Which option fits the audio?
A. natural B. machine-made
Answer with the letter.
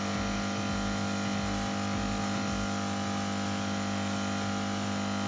A